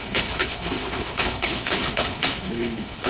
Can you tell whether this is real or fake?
fake